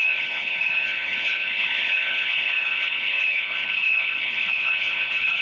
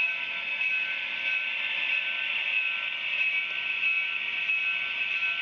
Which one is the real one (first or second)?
second